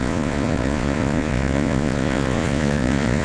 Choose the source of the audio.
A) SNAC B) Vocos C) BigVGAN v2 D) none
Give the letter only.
B